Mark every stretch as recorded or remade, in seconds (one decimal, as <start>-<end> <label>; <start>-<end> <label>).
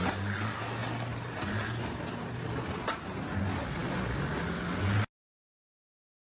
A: 0.0-6.3 recorded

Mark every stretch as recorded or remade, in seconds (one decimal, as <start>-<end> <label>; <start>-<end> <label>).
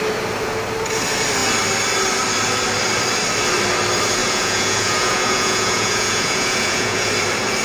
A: 0.0-4.2 recorded; 4.2-7.1 remade; 7.1-7.6 recorded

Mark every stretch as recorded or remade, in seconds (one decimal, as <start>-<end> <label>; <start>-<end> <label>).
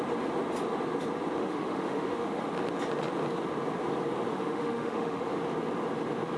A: 0.0-1.4 recorded; 1.4-2.5 remade; 2.5-4.3 recorded; 4.3-5.2 remade; 5.2-6.4 recorded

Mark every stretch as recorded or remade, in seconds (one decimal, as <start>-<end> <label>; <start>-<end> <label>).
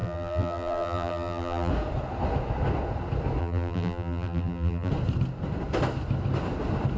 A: 0.0-1.7 remade; 1.7-3.4 recorded; 3.4-4.9 remade; 4.9-7.0 recorded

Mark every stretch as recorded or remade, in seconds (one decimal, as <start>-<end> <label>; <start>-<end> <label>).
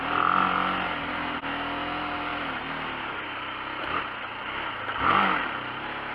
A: 0.0-6.1 recorded